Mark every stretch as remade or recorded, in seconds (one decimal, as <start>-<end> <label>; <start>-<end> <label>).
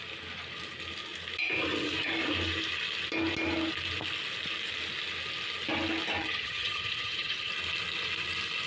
0.0-6.2 recorded; 6.2-7.5 remade; 7.5-8.7 recorded